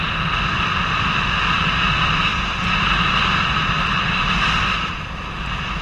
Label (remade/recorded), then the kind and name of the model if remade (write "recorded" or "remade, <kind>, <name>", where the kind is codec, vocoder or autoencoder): recorded